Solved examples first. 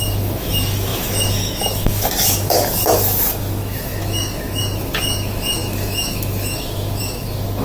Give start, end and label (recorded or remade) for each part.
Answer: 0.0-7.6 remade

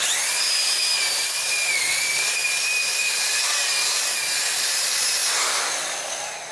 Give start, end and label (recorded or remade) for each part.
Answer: 0.0-3.5 remade; 3.5-4.6 recorded; 4.6-5.2 remade; 5.2-6.5 recorded

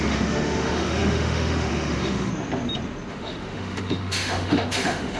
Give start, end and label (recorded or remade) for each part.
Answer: 0.0-2.3 remade; 2.3-3.1 recorded; 3.1-5.2 remade

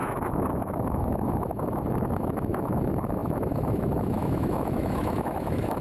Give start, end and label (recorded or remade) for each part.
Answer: 0.0-5.8 remade

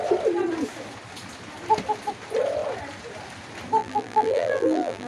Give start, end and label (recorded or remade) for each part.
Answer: 0.0-3.8 recorded; 3.8-5.1 remade

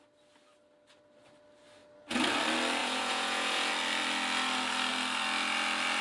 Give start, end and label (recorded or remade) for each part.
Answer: 0.0-2.8 recorded; 2.8-3.7 remade; 3.7-6.0 recorded

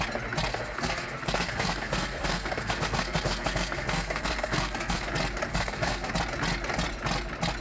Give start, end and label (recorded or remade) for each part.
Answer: 0.0-0.5 recorded; 0.5-5.1 remade; 5.1-5.5 recorded; 5.5-6.1 remade; 6.1-7.6 recorded

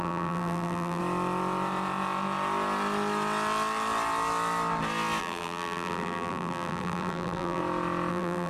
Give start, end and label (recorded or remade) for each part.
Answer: 0.0-1.0 remade; 1.0-5.2 recorded; 5.2-7.6 remade; 7.6-8.1 recorded; 8.1-8.5 remade